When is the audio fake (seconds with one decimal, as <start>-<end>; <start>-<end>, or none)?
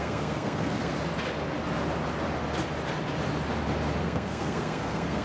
0.0-0.9; 4.0-5.2